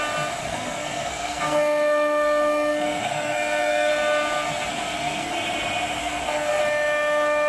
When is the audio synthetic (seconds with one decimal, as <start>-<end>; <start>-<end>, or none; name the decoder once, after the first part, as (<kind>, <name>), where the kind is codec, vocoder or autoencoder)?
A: 0.4-3.9 (codec, SNAC); 4.7-5.3; 6.0-6.6